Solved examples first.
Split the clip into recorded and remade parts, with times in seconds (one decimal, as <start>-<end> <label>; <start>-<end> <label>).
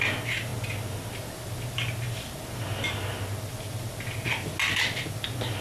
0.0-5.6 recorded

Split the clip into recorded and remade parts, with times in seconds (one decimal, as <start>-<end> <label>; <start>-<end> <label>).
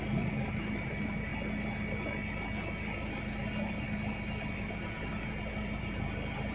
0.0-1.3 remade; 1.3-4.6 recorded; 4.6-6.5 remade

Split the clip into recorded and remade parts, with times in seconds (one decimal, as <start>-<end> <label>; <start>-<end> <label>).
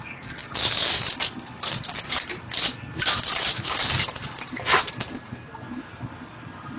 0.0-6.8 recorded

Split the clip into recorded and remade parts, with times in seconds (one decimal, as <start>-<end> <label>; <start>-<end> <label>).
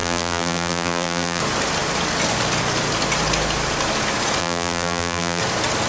0.0-1.4 remade; 1.4-4.4 recorded; 4.4-5.4 remade; 5.4-5.9 recorded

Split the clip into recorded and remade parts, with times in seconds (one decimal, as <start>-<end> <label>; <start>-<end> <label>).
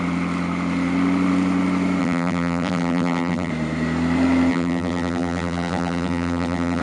0.0-2.0 recorded; 2.0-3.5 remade; 3.5-4.5 recorded; 4.5-6.8 remade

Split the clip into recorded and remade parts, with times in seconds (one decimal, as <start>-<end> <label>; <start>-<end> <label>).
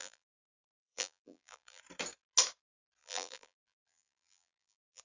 0.0-1.8 remade; 1.8-3.0 recorded; 3.0-5.0 remade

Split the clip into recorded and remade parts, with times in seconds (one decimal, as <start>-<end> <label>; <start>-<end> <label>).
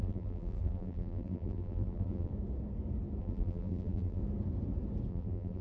0.0-2.3 remade; 2.3-3.2 recorded; 3.2-4.2 remade; 4.2-5.1 recorded; 5.1-5.6 remade